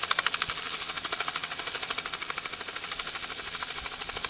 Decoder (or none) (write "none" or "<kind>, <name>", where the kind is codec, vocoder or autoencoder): none